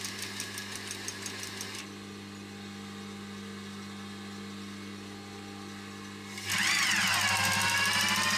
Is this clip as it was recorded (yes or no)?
yes